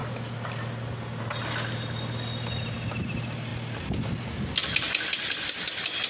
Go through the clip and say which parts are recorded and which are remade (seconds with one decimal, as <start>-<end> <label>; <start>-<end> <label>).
0.0-6.1 recorded